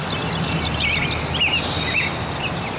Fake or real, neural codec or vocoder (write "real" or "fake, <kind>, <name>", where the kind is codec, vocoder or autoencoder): real